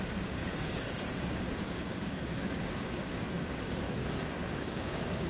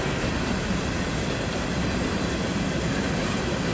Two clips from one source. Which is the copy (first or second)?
first